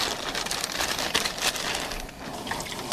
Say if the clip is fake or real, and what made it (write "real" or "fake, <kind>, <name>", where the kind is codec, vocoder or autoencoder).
real